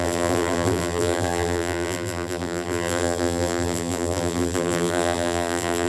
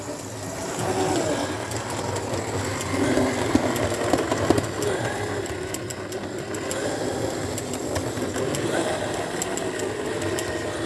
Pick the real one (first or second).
second